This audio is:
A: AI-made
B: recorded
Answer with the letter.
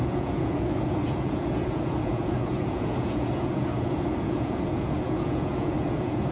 A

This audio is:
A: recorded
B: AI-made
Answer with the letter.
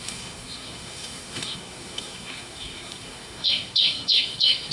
B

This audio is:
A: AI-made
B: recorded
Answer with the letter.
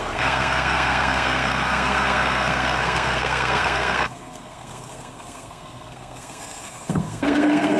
A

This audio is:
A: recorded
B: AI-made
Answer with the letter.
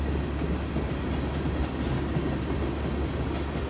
A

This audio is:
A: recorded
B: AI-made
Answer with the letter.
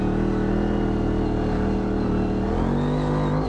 A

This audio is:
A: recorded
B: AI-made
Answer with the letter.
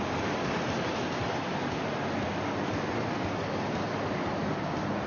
A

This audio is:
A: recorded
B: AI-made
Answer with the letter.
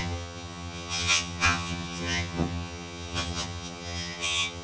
B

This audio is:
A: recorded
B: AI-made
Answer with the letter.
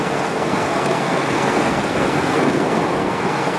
B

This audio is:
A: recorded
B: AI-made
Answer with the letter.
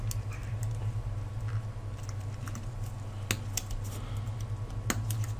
A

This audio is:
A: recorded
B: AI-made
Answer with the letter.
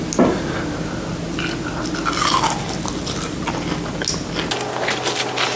A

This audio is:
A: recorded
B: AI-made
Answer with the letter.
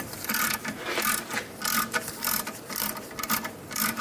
A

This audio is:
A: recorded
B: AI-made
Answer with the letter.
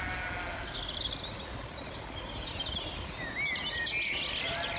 A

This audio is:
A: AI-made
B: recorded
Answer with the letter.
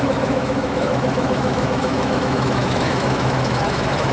A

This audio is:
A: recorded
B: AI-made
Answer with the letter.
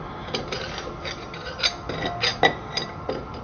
A